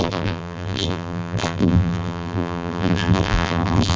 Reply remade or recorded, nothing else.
remade